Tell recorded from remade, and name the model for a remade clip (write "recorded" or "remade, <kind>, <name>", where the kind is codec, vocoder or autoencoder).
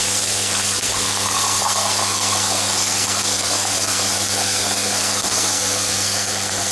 remade, codec, SNAC